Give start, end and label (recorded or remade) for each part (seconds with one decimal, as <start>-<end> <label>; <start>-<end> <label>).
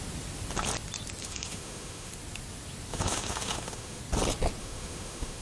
0.0-1.2 recorded; 1.2-2.1 remade; 2.1-2.9 recorded; 2.9-4.0 remade; 4.0-4.6 recorded; 4.6-5.4 remade